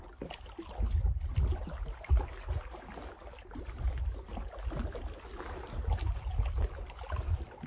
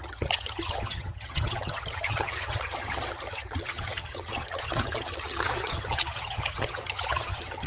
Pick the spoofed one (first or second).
second